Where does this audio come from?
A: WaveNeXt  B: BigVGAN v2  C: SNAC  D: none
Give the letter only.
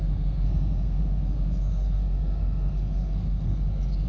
C